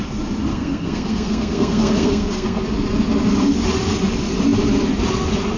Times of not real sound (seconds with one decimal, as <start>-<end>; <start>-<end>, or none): 0.5-2.6